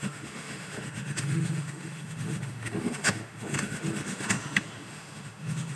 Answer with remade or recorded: remade